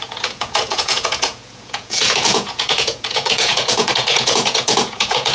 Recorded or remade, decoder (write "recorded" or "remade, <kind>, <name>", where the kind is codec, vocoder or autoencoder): remade, vocoder, Vocos